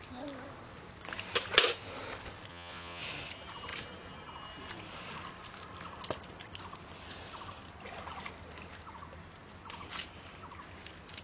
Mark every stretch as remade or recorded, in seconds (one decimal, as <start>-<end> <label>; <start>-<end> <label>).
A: 0.0-2.5 recorded; 2.5-3.0 remade; 3.0-11.2 recorded